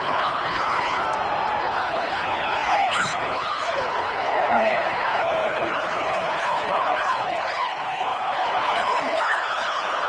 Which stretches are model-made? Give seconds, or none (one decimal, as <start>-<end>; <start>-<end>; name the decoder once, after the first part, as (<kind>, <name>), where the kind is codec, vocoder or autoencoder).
0.0-1.0 (codec, HILCodec); 1.6-10.1